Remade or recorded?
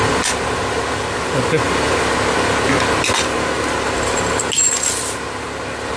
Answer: recorded